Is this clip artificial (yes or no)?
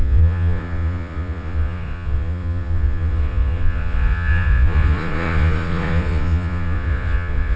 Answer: yes